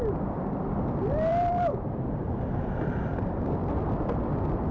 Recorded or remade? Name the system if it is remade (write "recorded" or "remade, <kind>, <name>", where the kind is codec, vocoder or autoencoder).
remade, vocoder, BigVGAN v2